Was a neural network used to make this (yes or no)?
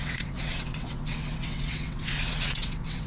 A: yes